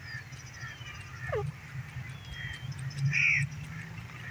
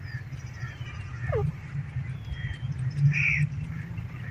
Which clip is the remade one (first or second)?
second